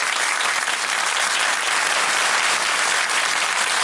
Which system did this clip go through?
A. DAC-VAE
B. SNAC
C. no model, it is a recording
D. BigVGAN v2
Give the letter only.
C